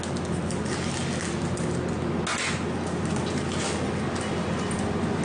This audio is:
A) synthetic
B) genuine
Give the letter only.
B